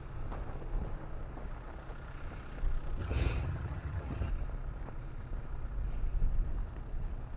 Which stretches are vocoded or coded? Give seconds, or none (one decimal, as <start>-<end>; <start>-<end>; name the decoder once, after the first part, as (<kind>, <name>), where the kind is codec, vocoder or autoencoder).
3.0-4.3 (vocoder, HiFi-GAN)